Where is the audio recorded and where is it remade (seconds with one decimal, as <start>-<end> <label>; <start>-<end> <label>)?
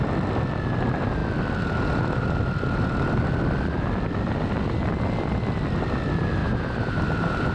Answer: 0.0-6.4 recorded; 6.4-7.5 remade